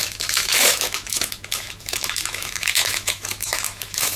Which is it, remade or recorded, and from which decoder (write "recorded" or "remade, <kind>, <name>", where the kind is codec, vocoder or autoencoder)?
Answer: remade, autoencoder, DAC-VAE